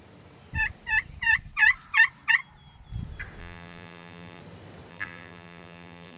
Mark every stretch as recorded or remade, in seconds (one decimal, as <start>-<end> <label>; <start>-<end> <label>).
0.0-3.4 recorded; 3.4-4.4 remade; 4.4-4.9 recorded; 4.9-6.2 remade